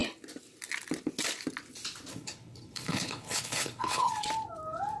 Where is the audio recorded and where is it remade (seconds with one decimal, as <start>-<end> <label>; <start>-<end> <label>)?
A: 0.0-2.1 recorded; 2.1-4.1 remade; 4.1-5.0 recorded